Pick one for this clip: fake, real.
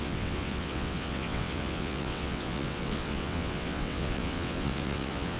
fake